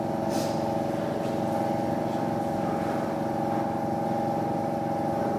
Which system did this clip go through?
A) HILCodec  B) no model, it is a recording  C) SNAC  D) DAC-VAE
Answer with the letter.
B